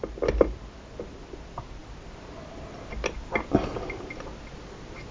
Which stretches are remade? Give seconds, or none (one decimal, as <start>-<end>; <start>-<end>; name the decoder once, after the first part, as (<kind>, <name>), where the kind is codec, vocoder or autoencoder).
none